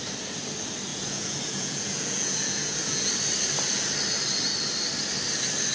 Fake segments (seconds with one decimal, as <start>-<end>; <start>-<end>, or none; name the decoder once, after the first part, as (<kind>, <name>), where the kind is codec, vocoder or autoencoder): 0.9-3.1 (vocoder, Vocos)